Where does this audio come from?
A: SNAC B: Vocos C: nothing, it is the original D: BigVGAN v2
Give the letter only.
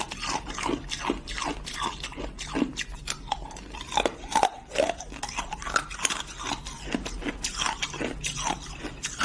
C